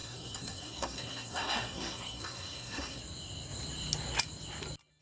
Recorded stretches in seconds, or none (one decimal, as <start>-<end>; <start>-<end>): 3.0-5.0